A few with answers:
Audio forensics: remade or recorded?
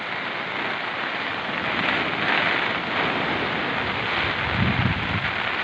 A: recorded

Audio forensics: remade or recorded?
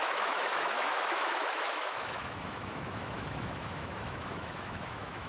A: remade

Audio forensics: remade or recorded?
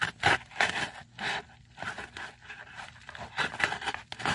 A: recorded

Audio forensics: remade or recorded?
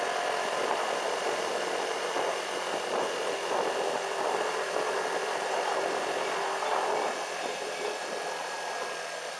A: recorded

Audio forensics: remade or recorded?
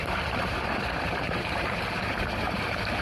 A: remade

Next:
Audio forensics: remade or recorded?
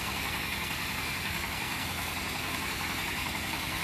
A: remade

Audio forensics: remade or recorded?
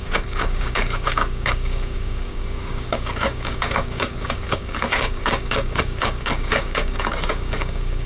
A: remade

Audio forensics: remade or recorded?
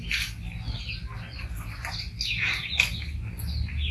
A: recorded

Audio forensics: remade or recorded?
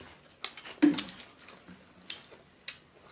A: recorded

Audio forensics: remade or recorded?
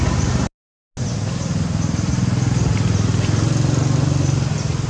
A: recorded